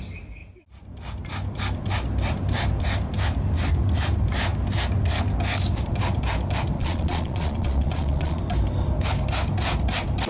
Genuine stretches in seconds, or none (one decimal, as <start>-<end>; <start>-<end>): 0.0-6.8; 8.4-10.3